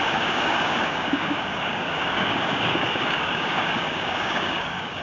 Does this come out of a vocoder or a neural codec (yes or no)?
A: yes